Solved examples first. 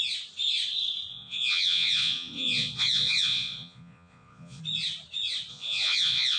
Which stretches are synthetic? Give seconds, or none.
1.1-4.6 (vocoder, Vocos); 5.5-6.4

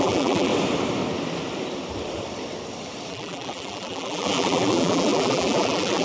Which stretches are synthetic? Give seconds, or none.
0.0-0.5 (vocoder, BigVGAN v2); 3.1-6.0

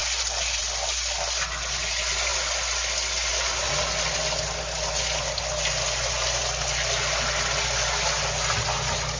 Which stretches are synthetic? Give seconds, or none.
none

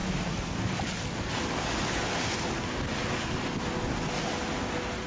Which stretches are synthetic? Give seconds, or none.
none

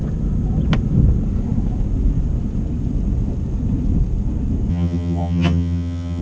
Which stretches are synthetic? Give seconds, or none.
4.7-6.2 (vocoder, HiFi-GAN)

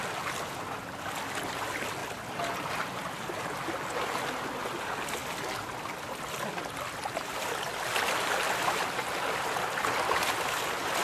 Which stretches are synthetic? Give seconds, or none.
none

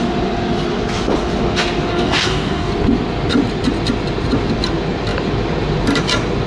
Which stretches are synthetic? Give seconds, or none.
1.9-2.7 (codec, DAC)